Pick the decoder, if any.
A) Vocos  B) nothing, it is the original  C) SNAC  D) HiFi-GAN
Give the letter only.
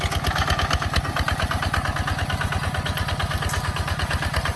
B